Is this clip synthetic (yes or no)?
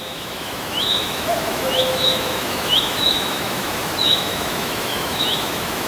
yes